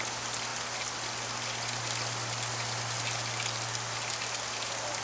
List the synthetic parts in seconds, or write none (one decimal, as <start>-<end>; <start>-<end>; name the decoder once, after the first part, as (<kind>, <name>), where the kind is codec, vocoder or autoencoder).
none